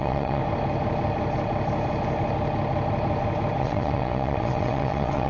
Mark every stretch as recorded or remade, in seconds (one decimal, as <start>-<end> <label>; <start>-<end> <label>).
0.0-0.4 remade; 0.4-3.6 recorded; 3.6-5.3 remade